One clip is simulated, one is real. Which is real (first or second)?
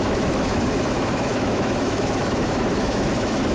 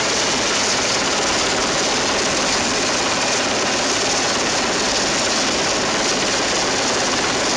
second